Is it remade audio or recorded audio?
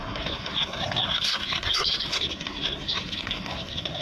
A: remade